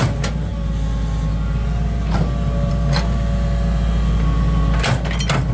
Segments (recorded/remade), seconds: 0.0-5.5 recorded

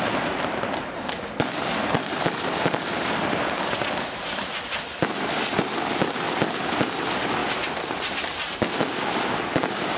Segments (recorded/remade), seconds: 0.0-10.0 recorded

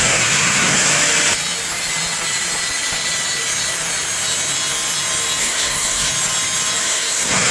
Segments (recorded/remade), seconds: 0.0-0.9 remade; 0.9-5.4 recorded; 5.4-6.1 remade; 6.1-6.8 recorded; 6.8-7.5 remade

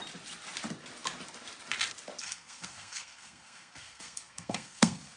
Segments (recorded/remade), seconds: 0.0-2.2 recorded; 2.2-5.2 remade

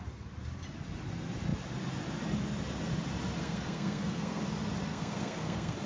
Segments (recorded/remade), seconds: 0.0-3.4 recorded; 3.4-4.4 remade; 4.4-4.9 recorded; 4.9-5.9 remade